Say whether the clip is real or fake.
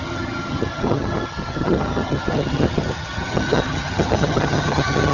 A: fake